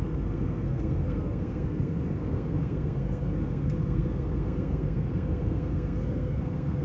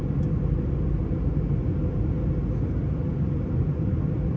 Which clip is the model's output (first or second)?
first